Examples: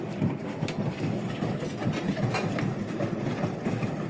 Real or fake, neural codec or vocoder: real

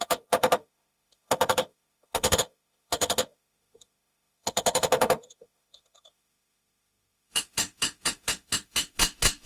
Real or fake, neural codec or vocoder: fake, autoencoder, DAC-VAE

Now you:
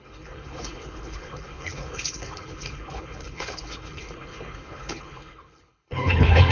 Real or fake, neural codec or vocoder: fake, codec, HILCodec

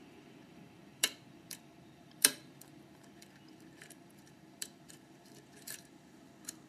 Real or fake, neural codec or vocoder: fake, vocoder, BigVGAN v2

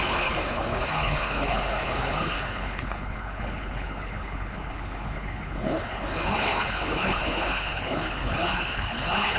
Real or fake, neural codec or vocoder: fake, codec, HILCodec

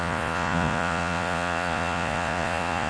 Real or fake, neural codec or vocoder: fake, vocoder, Vocos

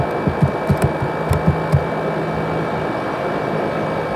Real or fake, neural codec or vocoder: real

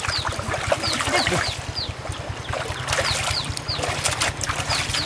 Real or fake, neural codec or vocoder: real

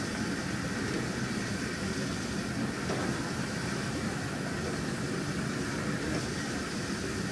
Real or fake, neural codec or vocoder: real